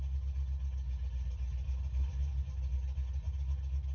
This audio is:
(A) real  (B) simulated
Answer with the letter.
A